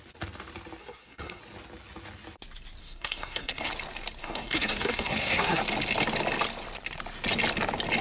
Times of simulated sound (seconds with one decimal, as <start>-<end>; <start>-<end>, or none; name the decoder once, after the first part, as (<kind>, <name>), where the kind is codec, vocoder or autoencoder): 0.8-1.4 (codec, SNAC); 2.8-3.7; 4.2-5.6